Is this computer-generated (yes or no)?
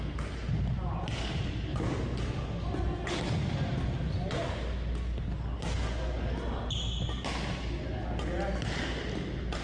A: no